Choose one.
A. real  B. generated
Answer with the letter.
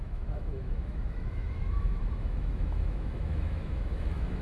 B